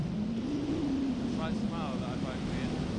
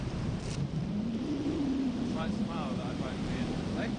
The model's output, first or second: second